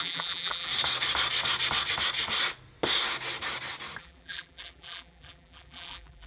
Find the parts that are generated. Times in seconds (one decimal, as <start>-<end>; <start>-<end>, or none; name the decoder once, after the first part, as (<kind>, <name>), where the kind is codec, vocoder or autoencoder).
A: 0.0-0.7 (vocoder, BigVGAN v2); 4.0-6.3